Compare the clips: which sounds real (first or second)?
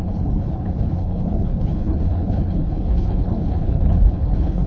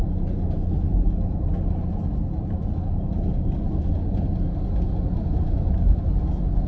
second